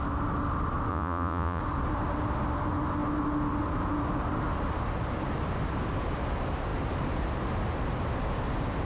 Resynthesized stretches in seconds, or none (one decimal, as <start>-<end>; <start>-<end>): 0.9-1.6